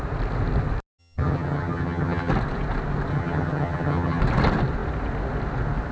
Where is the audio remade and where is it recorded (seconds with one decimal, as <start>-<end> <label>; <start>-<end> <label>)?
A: 0.0-1.0 recorded; 1.0-2.3 remade; 2.3-3.1 recorded; 3.1-4.2 remade; 4.2-5.9 recorded